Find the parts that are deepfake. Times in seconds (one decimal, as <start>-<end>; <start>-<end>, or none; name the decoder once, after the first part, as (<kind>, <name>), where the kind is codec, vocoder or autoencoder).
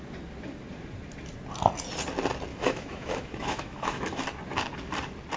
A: 2.5-4.2 (autoencoder, DAC-VAE)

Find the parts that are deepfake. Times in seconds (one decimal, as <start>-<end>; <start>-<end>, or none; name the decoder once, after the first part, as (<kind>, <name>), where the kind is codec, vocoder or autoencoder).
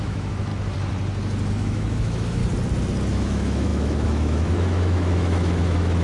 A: 0.0-0.5 (autoencoder, DAC-VAE); 1.5-2.4; 3.1-6.0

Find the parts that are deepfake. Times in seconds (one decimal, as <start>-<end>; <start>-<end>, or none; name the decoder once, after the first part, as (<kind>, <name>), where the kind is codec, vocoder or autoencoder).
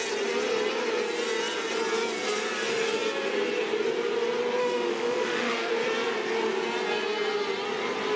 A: 4.6-5.7 (autoencoder, DAC-VAE)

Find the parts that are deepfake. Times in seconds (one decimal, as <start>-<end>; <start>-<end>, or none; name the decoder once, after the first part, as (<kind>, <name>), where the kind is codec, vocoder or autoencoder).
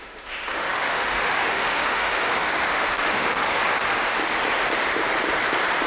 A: 0.0-3.6 (autoencoder, DAC-VAE)